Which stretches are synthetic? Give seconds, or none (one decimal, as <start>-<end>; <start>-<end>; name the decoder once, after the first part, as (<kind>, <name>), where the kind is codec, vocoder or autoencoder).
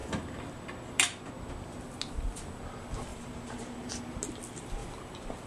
3.1-4.0 (vocoder, BigVGAN v2)